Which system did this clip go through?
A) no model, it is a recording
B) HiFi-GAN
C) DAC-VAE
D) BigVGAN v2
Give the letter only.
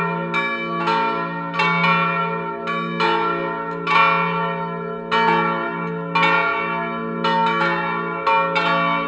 A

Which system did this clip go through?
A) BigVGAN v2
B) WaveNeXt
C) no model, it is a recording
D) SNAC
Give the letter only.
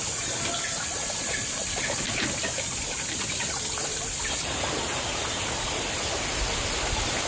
C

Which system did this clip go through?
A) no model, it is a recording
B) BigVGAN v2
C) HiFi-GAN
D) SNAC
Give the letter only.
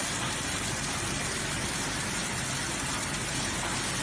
A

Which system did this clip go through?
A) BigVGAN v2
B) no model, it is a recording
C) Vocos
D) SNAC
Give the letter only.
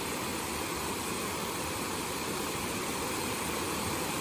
A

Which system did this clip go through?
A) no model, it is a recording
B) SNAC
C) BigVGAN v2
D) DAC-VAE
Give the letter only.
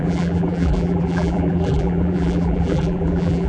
C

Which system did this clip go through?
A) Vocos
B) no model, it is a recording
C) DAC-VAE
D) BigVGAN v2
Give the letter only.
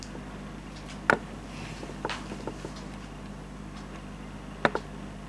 B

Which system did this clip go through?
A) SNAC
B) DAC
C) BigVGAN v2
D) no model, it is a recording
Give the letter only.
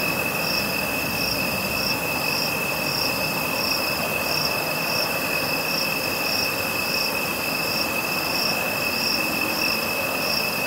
C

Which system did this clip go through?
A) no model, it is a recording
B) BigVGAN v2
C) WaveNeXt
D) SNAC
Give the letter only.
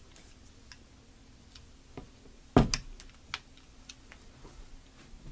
A